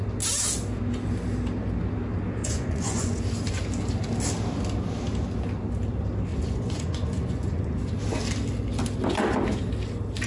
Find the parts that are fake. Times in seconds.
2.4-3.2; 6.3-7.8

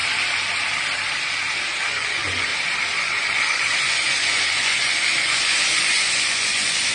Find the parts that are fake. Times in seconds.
1.8-2.5; 3.0-6.9

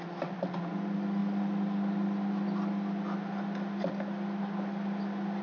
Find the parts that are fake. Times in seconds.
none

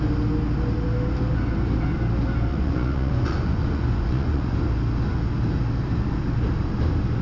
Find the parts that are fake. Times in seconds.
2.5-4.6

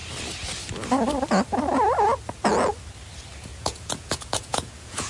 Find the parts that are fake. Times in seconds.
3.5-5.1

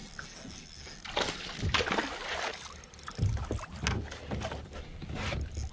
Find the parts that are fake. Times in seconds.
none

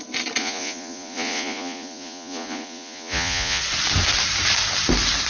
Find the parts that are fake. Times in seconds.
0.4-3.6